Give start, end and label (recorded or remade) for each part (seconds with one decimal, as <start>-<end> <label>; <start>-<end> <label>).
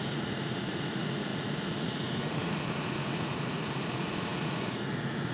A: 0.0-5.3 remade